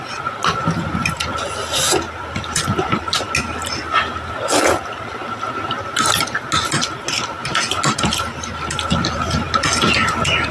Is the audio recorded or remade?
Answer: recorded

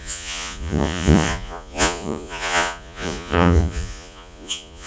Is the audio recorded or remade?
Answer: remade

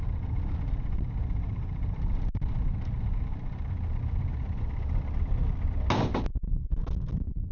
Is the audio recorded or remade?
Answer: recorded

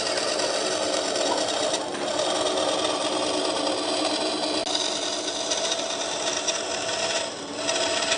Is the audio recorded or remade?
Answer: recorded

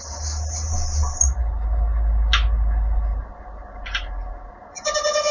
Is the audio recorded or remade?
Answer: recorded